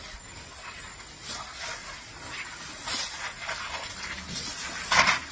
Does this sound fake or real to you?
real